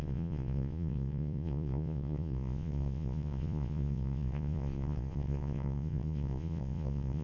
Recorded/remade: remade